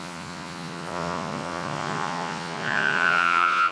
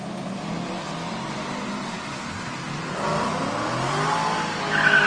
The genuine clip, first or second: second